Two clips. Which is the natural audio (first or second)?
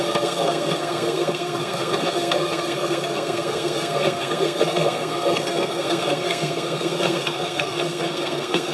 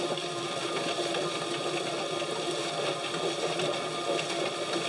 second